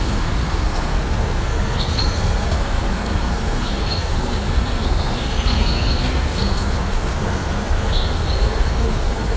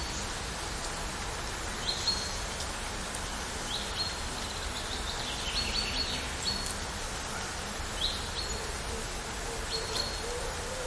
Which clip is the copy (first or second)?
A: first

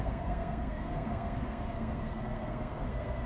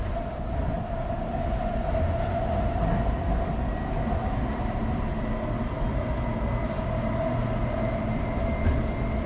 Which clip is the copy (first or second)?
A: first